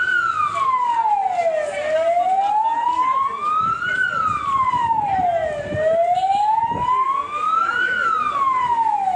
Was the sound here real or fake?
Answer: real